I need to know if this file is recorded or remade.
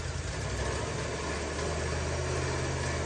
recorded